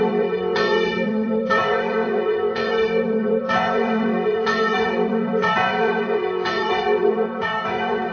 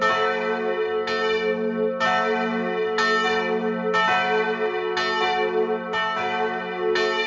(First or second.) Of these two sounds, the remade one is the first